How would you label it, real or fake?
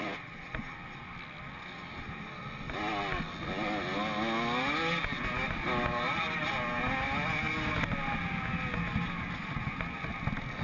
real